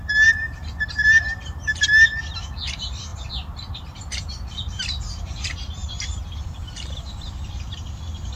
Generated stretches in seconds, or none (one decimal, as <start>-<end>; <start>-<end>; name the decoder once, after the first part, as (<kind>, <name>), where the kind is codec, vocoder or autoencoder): 1.0-1.9 (vocoder, BigVGAN v2); 3.1-4.5; 5.8-7.0